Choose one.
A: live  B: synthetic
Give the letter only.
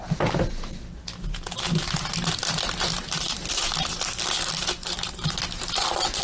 A